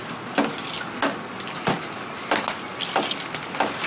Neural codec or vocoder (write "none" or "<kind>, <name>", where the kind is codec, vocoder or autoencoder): none